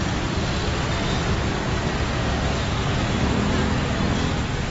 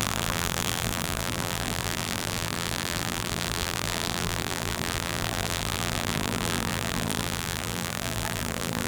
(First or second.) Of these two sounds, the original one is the first